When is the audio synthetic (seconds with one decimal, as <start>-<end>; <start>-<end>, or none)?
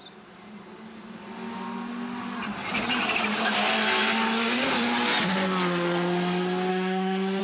6.7-7.4